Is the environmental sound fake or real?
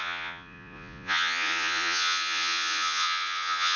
fake